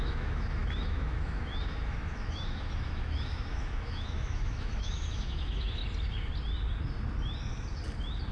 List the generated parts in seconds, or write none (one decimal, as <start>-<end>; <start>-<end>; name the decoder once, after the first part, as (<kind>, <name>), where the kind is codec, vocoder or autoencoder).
0.0-5.8 (autoencoder, DAC-VAE)